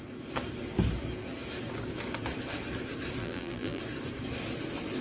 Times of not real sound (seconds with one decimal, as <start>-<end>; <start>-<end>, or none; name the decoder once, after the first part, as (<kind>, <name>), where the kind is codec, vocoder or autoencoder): 3.2-3.8 (vocoder, BigVGAN v2)